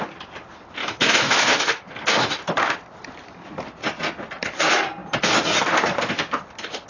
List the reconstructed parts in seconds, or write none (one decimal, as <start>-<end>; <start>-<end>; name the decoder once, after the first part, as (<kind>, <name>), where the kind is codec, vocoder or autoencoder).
0.8-1.7 (autoencoder, DAC-VAE)